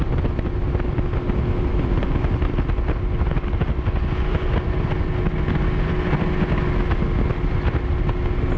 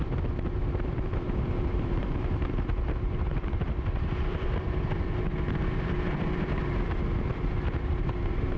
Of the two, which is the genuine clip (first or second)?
first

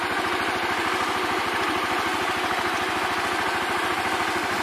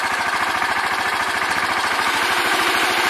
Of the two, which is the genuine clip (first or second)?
first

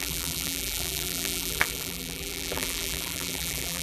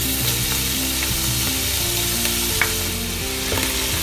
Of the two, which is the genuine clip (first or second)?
second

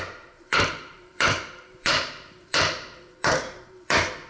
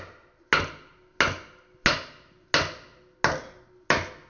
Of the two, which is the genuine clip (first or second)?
second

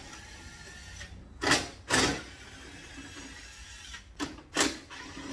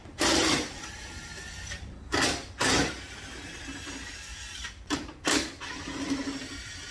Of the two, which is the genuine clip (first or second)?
first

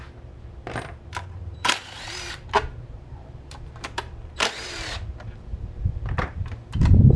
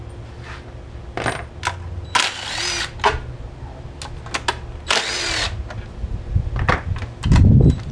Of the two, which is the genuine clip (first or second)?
second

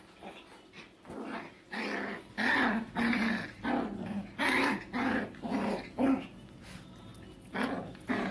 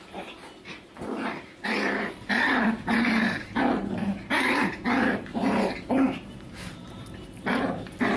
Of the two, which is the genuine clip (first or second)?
first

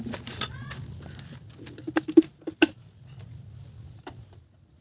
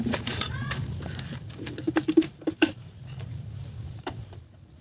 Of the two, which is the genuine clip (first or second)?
first